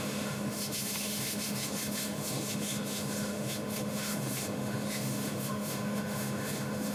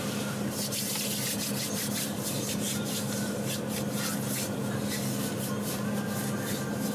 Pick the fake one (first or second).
first